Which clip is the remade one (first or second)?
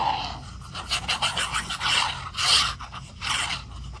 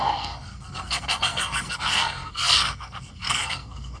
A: second